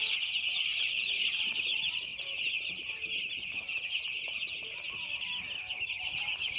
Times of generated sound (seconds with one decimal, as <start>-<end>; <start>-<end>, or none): 0.0-2.1; 6.0-6.6